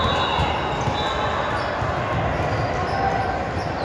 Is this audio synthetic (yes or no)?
no